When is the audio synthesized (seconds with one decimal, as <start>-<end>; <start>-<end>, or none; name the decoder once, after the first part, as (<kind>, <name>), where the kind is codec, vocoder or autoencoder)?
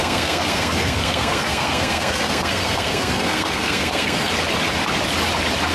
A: 0.0-4.3 (codec, SNAC)